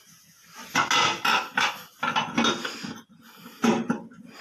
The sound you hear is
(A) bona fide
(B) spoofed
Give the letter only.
A